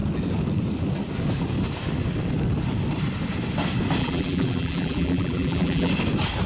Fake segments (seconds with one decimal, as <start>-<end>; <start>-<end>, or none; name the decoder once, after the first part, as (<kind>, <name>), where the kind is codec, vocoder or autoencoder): 4.0-5.9 (vocoder, BigVGAN v2)